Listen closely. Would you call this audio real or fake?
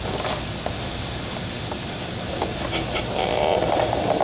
real